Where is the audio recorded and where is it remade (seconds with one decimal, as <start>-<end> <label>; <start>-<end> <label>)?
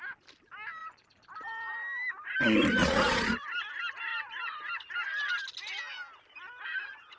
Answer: 0.0-2.8 recorded; 2.8-3.4 remade; 3.4-7.2 recorded